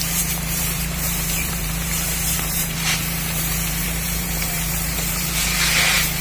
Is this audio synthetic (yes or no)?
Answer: yes